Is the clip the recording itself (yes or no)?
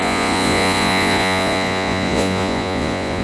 no